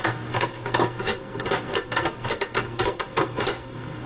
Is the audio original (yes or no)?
no